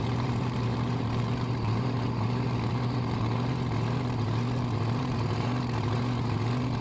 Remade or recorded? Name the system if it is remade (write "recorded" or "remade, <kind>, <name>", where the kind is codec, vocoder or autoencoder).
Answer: remade, vocoder, BigVGAN v2